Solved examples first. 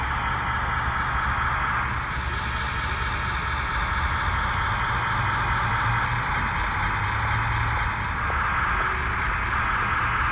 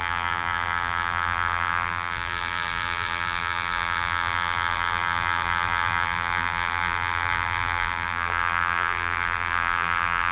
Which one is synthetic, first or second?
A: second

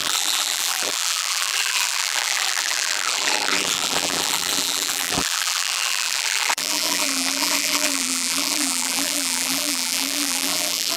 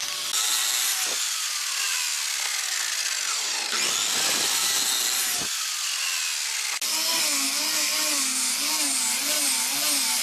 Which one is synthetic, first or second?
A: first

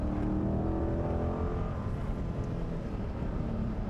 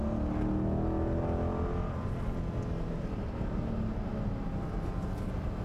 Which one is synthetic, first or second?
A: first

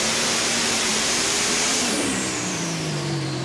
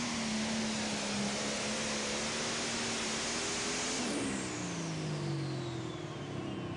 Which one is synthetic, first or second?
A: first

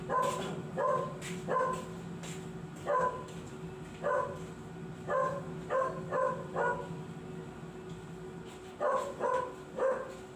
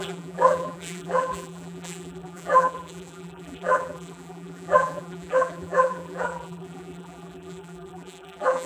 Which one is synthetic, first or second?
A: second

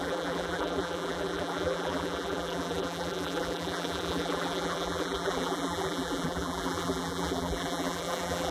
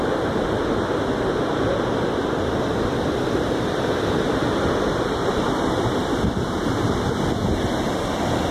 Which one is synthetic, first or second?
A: first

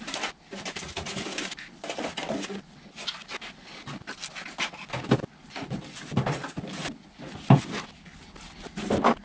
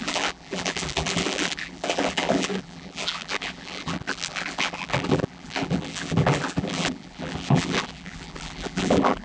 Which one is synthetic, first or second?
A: second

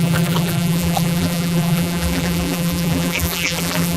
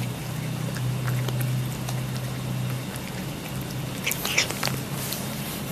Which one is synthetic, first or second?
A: first